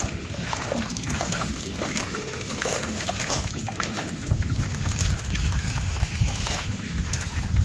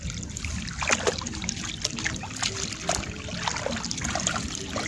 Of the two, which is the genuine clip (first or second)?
second